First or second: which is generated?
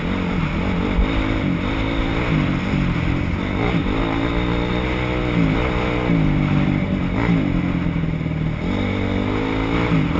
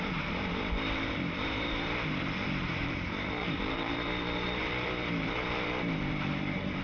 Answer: second